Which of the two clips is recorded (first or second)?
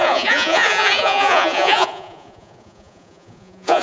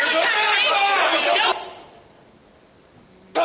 second